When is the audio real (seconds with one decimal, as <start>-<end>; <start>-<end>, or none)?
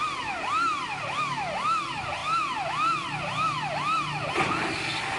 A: 0.0-5.2